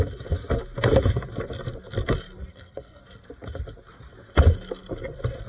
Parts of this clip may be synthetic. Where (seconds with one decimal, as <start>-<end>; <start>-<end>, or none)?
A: 2.5-3.0